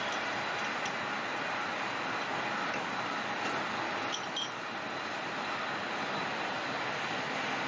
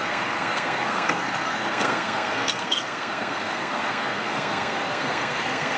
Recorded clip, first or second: first